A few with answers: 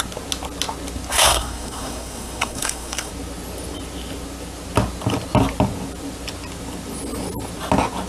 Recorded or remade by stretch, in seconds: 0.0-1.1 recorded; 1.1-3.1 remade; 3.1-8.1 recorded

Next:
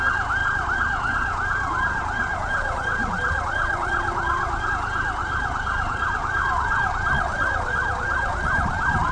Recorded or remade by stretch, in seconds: 0.0-0.4 recorded; 0.4-4.7 remade; 4.7-5.2 recorded; 5.2-9.1 remade

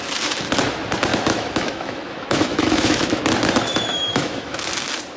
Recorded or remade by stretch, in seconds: 0.0-1.1 recorded; 1.1-3.2 remade; 3.2-3.9 recorded; 3.9-4.7 remade; 4.7-5.2 recorded

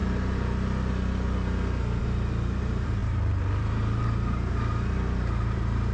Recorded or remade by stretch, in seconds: 0.0-2.0 recorded; 2.0-5.9 remade

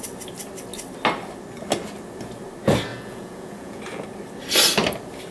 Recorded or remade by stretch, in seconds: 0.0-2.9 recorded; 2.9-3.8 remade; 3.8-5.3 recorded

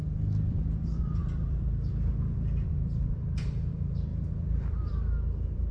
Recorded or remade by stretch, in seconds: 0.0-5.7 remade

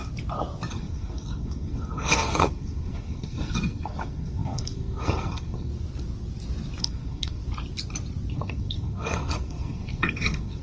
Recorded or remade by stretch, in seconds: 0.0-0.7 recorded; 0.7-5.7 remade; 5.7-6.8 recorded; 6.8-7.4 remade; 7.4-8.3 recorded; 8.3-10.6 remade